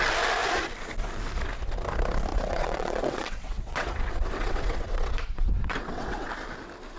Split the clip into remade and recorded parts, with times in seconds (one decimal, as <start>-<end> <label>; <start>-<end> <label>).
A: 0.0-2.3 recorded; 2.3-6.3 remade; 6.3-7.0 recorded

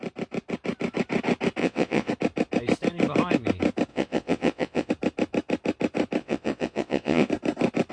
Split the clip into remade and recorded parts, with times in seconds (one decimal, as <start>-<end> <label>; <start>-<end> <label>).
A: 0.0-1.6 recorded; 1.6-2.1 remade; 2.1-3.9 recorded; 3.9-4.9 remade; 4.9-6.2 recorded; 6.2-7.3 remade; 7.3-7.9 recorded

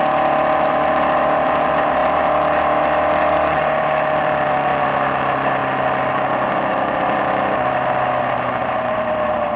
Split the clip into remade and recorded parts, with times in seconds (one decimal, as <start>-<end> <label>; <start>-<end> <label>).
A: 0.0-9.6 recorded

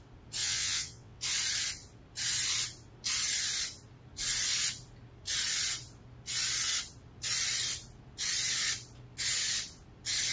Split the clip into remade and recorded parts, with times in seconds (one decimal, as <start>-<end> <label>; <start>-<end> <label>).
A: 0.0-0.4 recorded; 0.4-1.2 remade; 1.2-10.3 recorded

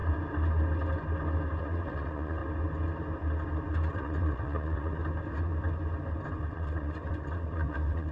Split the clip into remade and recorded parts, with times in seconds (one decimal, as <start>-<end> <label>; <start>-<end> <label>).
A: 0.0-1.6 recorded; 1.6-2.4 remade; 2.4-3.9 recorded; 3.9-5.0 remade; 5.0-6.4 recorded; 6.4-8.1 remade

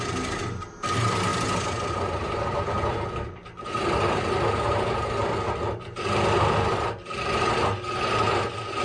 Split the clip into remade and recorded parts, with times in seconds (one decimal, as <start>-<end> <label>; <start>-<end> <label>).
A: 0.0-8.8 recorded

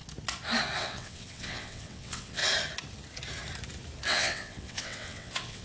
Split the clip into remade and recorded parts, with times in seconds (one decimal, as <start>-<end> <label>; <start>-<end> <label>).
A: 0.0-0.8 recorded; 0.8-2.4 remade; 2.4-4.1 recorded; 4.1-5.6 remade

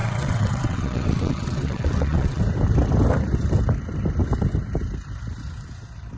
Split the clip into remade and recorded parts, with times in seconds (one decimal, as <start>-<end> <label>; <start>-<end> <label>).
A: 0.0-2.4 remade; 2.4-6.2 recorded